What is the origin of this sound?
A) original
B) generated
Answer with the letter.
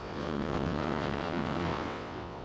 B